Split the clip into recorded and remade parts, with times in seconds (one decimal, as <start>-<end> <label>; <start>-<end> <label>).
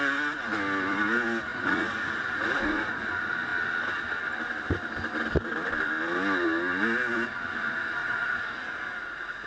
0.0-1.5 recorded; 1.5-3.1 remade; 3.1-8.0 recorded; 8.0-9.5 remade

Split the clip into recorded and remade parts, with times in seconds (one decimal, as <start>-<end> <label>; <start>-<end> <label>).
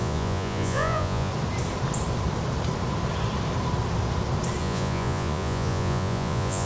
0.0-1.3 remade; 1.3-4.6 recorded; 4.6-6.7 remade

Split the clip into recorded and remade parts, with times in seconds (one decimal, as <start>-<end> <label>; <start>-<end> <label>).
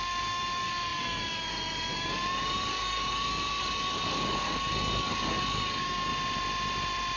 0.0-6.1 remade; 6.1-7.2 recorded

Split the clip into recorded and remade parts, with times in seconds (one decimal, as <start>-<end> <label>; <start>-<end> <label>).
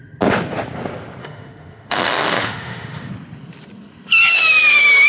0.0-1.2 recorded; 1.2-3.1 remade; 3.1-4.3 recorded; 4.3-5.1 remade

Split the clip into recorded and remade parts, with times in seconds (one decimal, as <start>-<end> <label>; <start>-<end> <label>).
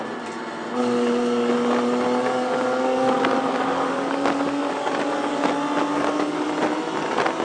0.0-0.8 recorded; 0.8-1.5 remade; 1.5-2.2 recorded; 2.2-5.5 remade; 5.5-5.9 recorded; 5.9-6.5 remade; 6.5-7.4 recorded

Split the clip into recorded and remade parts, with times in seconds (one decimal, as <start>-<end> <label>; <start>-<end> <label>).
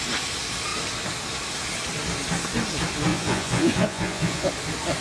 0.0-3.1 recorded; 3.1-4.5 remade; 4.5-5.0 recorded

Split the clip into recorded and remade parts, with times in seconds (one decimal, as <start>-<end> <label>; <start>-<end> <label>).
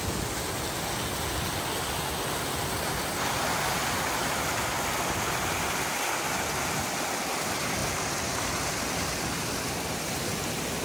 0.0-10.8 recorded